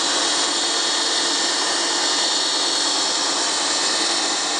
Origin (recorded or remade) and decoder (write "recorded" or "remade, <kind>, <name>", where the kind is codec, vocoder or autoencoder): recorded